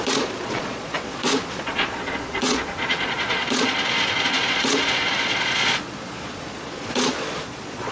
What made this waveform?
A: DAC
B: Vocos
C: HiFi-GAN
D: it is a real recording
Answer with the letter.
B